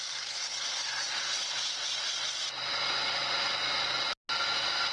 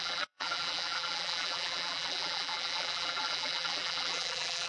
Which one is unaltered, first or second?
first